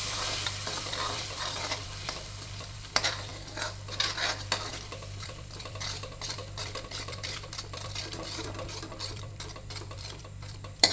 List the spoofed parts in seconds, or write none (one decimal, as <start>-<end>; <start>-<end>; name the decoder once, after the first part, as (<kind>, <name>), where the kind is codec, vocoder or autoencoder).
0.0-3.3 (vocoder, BigVGAN v2); 4.7-10.9